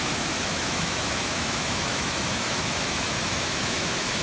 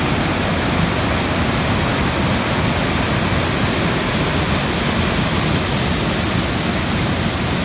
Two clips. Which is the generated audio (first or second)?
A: first